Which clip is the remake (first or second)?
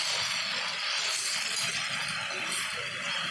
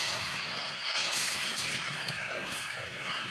second